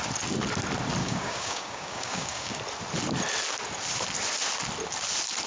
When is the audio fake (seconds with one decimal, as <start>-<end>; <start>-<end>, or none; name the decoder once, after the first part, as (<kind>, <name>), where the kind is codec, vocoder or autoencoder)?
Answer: 1.0-2.6 (codec, DAC)